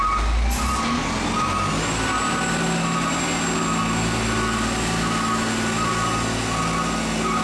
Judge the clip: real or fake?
real